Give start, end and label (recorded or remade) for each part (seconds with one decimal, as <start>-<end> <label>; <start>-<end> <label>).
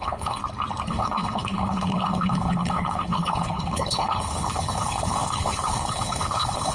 0.0-0.4 remade; 0.4-0.9 recorded; 0.9-6.7 remade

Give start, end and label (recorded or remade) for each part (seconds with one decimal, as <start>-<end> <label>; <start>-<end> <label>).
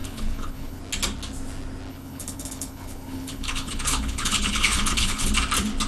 0.0-0.8 remade; 0.8-1.9 recorded; 1.9-5.3 remade; 5.3-5.9 recorded